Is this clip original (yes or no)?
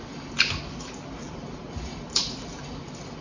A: yes